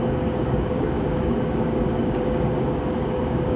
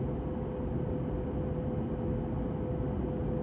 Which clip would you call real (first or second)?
second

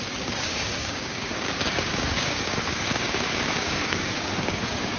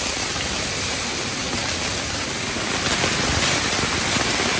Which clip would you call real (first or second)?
second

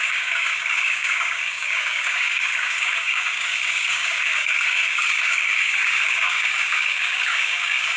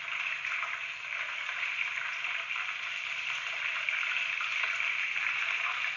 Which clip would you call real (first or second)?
second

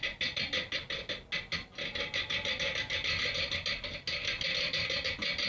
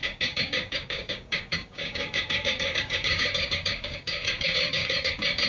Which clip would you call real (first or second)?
first